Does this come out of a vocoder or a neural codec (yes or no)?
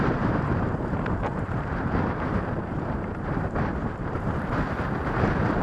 yes